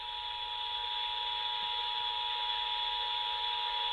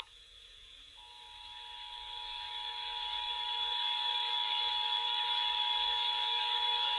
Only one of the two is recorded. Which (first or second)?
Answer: first